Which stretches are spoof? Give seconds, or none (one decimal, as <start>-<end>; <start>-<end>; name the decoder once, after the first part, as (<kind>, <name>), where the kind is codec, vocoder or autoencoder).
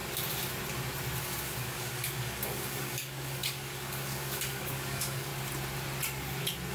1.2-5.3 (codec, DAC)